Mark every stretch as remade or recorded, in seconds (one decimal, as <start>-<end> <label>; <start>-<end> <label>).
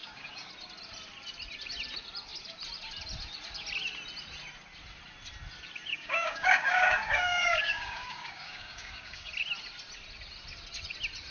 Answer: 0.0-0.5 remade; 0.5-5.9 recorded; 5.9-9.3 remade; 9.3-11.3 recorded